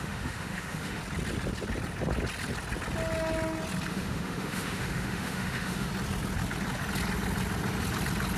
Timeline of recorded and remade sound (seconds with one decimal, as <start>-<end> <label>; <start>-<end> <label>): 0.0-1.0 remade; 1.0-3.9 recorded; 3.9-5.9 remade; 5.9-8.4 recorded